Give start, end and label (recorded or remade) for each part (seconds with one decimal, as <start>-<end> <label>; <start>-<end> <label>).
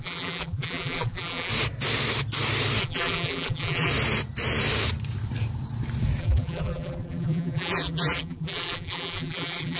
0.0-1.5 remade; 1.5-2.8 recorded; 2.8-3.9 remade; 3.9-6.2 recorded; 6.2-9.8 remade